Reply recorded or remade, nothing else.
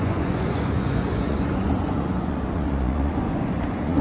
remade